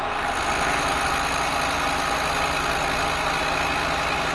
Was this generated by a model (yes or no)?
no